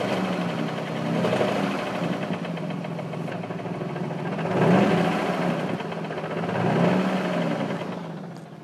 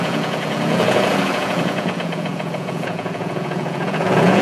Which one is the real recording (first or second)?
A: first